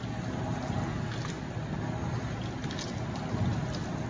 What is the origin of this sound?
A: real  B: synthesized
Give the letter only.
A